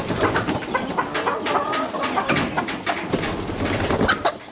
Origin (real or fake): fake